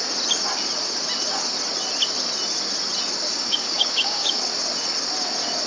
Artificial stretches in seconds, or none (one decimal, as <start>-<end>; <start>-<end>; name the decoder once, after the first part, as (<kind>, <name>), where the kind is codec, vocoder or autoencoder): 3.3-4.4 (codec, DAC)